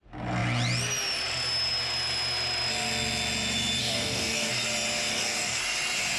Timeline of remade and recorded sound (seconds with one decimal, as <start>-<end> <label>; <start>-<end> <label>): 0.0-3.8 recorded; 3.8-4.5 remade; 4.5-5.1 recorded; 5.1-5.6 remade; 5.6-6.2 recorded